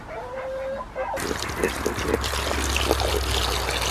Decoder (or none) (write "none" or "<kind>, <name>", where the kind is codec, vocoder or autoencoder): none